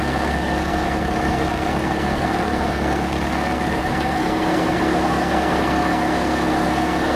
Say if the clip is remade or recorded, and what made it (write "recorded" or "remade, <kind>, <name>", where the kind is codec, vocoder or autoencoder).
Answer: remade, codec, SNAC